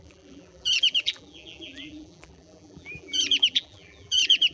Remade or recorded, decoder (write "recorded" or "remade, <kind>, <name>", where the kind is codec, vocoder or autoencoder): remade, vocoder, BigVGAN v2